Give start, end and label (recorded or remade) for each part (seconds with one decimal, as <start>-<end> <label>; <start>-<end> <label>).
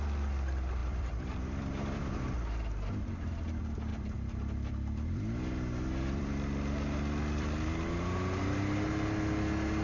0.0-0.8 recorded; 0.8-2.0 remade; 2.0-3.9 recorded; 3.9-7.7 remade; 7.7-9.8 recorded